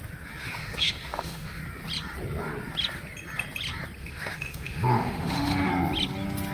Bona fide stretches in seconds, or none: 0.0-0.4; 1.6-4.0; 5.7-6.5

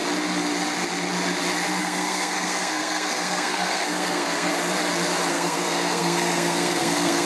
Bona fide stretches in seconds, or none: 0.0-1.8; 4.5-5.3

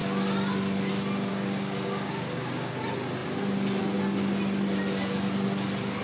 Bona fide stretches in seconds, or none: 0.0-1.3; 2.7-6.0

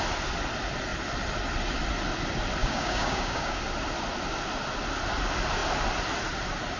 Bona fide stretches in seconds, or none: 0.0-2.6; 3.6-6.8

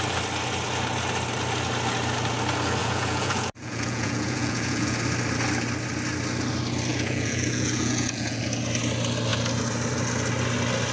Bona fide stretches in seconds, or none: 0.0-2.8; 5.0-6.9; 8.4-10.9